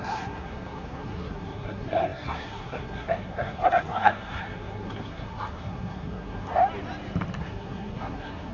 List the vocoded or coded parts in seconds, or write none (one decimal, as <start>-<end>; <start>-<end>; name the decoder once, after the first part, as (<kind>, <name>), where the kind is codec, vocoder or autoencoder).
0.0-6.6 (codec, SNAC); 7.4-8.5